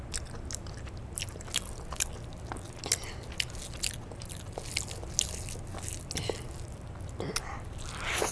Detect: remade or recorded recorded